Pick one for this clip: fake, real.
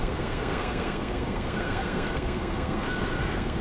fake